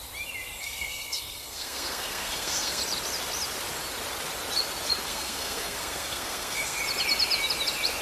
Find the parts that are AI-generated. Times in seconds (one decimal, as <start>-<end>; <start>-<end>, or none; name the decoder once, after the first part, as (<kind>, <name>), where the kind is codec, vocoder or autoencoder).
0.6-2.8 (codec, SNAC); 5.1-6.8